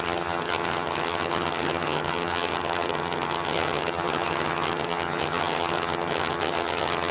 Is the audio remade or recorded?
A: remade